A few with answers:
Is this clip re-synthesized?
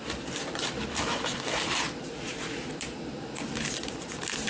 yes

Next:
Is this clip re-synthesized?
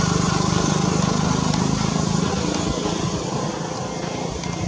no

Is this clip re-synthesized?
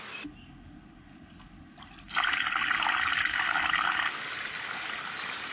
no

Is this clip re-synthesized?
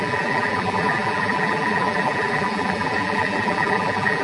yes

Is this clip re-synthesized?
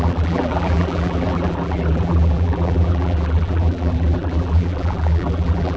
yes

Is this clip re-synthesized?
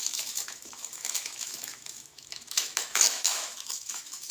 yes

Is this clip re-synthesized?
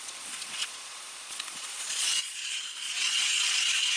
yes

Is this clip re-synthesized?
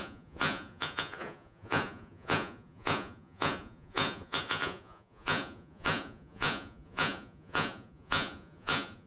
yes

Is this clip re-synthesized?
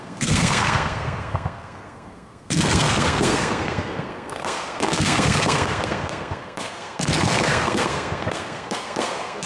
yes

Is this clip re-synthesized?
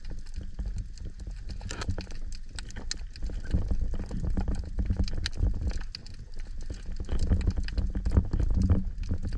no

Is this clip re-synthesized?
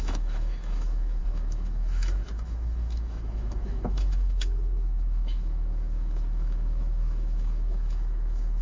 yes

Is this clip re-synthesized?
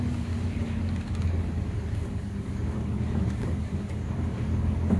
yes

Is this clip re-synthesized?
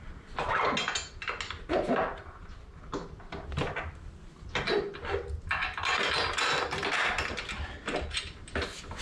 no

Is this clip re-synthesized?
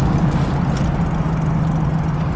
no